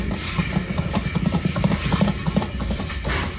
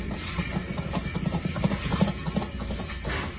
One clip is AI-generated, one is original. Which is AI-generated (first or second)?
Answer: first